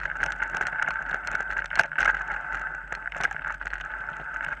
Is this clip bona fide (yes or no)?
yes